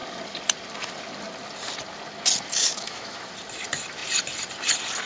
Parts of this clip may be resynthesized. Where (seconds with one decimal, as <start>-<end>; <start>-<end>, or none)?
2.6-3.3